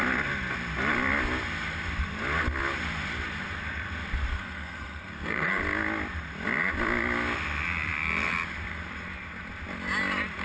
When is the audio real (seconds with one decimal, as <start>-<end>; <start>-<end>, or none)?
0.0-4.3; 5.6-10.4

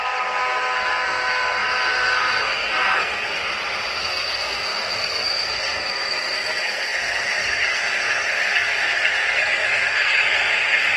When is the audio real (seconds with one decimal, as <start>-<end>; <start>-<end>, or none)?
3.4-4.0

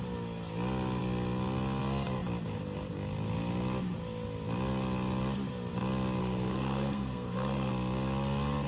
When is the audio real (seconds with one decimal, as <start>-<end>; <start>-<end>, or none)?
0.0-6.2; 7.7-8.7

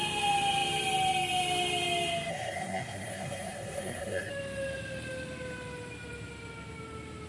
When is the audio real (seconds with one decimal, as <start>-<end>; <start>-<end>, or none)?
0.0-2.3; 4.3-7.3

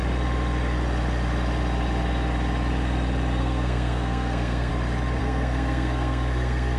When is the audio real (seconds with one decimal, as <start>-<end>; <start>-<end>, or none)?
0.0-3.4; 4.7-5.2

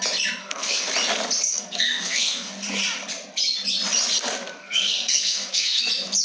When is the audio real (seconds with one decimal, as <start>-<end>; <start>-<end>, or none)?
0.0-0.4; 0.9-1.5; 2.5-4.6; 5.8-6.2

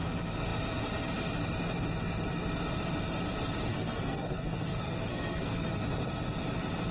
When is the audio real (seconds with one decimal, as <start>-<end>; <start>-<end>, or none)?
0.0-3.7; 5.7-6.9

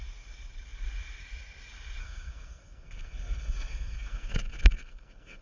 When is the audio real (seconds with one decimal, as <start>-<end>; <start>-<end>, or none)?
0.0-2.0